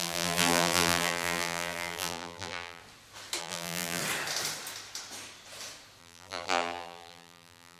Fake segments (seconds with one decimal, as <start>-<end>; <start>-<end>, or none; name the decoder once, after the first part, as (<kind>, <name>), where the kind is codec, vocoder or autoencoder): 0.0-2.8 (vocoder, BigVGAN v2); 3.4-4.0; 6.0-7.8